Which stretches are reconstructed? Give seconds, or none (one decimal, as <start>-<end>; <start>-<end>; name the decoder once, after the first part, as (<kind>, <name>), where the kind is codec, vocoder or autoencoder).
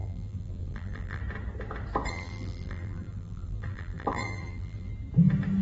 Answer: 0.0-1.2 (vocoder, BigVGAN v2); 2.1-4.9